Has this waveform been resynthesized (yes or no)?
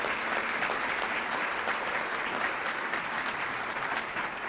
no